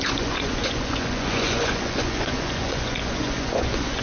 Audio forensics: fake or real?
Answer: fake